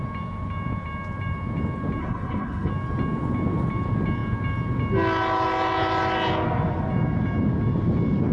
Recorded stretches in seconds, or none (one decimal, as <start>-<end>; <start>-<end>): 0.0-2.0; 2.7-8.3